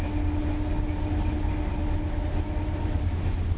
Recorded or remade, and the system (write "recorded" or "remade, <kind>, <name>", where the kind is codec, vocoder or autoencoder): recorded